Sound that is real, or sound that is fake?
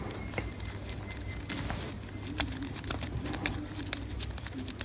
real